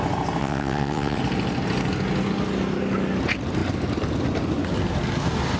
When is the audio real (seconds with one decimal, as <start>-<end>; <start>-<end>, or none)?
0.0-0.4; 1.2-5.6